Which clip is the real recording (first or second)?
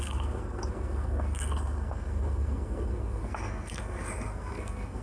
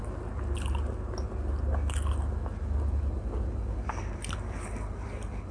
second